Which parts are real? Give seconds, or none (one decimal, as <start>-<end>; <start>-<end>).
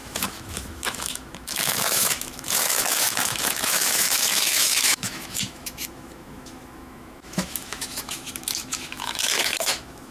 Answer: none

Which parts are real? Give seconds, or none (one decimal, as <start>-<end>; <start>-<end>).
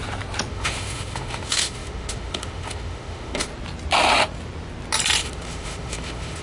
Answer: 0.0-0.5; 3.5-5.2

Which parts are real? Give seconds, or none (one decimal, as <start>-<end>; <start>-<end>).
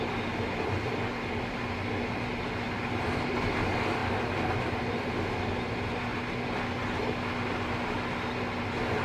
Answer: 0.0-9.0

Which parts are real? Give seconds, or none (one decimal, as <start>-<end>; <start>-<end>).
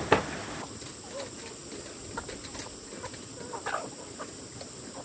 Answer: 0.0-5.0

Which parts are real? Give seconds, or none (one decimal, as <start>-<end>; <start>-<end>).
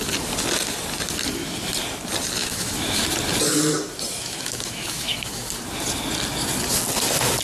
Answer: 0.0-2.4; 3.0-4.1; 5.5-7.4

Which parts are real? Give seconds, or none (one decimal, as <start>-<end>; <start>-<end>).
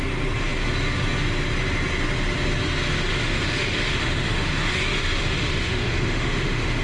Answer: 0.0-3.1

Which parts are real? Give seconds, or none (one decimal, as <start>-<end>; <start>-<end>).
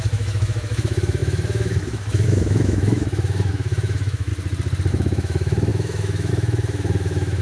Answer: 4.3-4.9